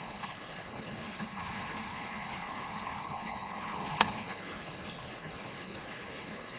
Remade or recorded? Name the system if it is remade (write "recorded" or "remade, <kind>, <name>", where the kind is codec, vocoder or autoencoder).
remade, codec, HILCodec